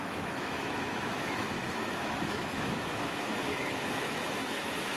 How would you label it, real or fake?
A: fake